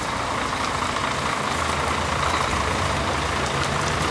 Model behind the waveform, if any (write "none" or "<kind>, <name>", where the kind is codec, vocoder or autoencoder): none